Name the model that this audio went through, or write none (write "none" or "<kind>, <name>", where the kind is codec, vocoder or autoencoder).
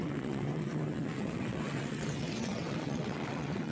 vocoder, WaveNeXt